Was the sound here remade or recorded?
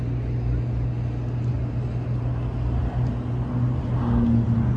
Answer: recorded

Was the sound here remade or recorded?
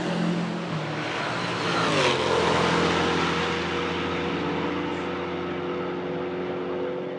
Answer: recorded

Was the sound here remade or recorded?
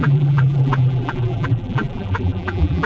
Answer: remade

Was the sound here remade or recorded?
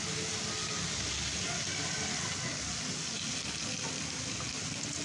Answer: recorded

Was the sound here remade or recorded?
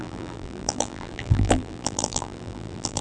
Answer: remade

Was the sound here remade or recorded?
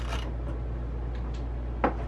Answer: recorded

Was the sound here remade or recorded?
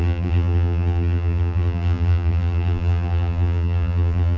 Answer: remade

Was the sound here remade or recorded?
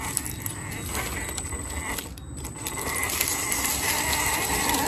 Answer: recorded